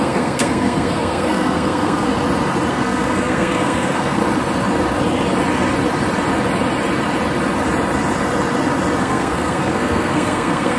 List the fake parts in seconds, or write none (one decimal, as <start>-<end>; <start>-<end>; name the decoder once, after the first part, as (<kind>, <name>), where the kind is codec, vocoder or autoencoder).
0.0-2.1 (codec, SNAC); 2.7-4.2; 9.0-10.8